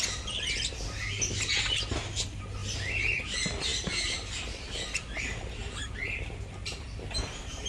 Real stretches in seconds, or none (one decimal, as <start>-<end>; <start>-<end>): 0.0-7.7

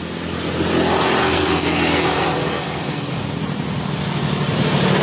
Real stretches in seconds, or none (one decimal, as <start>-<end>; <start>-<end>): 0.0-1.2; 3.3-5.0

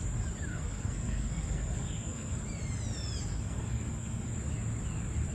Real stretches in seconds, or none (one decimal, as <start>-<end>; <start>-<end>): 0.0-0.5; 2.4-3.3; 4.3-5.3

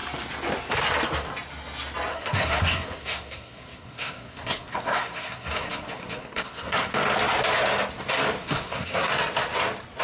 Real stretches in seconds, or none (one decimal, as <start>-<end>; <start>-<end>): 0.0-2.1; 6.9-8.4; 9.1-10.0

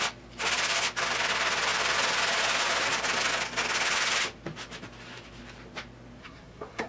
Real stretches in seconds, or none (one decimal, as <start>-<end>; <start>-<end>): 0.0-6.2

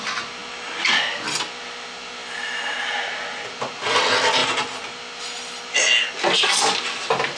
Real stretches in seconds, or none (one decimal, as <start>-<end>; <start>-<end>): 0.0-7.4

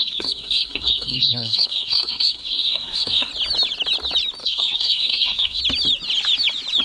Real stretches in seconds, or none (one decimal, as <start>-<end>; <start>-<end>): 3.3-4.4; 5.6-6.8

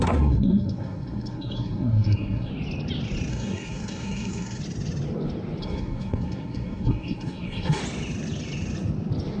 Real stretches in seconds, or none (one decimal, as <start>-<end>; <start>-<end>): 2.5-3.3; 4.6-5.6; 7.8-9.4